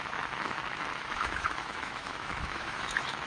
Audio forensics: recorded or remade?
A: remade